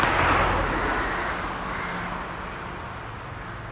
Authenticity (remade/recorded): recorded